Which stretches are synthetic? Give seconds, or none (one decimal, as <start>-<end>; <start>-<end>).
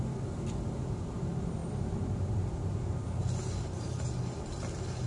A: none